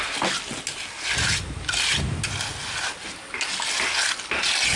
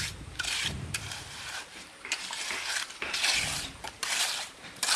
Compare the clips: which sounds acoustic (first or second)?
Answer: first